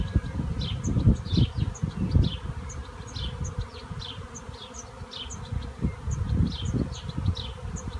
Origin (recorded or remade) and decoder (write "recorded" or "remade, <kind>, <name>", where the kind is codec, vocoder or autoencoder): recorded